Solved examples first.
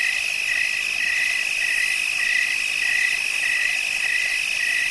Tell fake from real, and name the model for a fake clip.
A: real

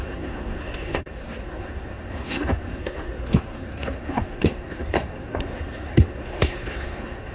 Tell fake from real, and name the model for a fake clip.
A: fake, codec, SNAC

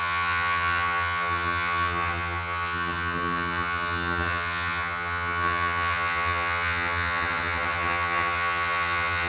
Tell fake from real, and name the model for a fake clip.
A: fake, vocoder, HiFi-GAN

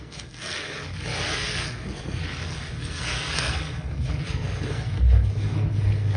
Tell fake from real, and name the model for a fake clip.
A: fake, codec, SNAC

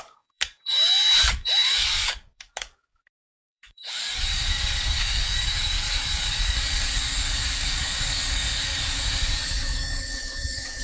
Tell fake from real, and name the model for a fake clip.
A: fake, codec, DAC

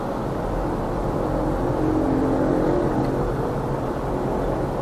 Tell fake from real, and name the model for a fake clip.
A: real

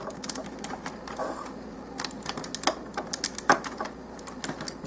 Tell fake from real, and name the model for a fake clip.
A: real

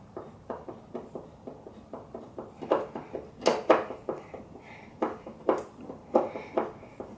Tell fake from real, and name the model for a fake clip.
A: real